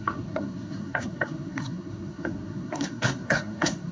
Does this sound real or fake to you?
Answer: fake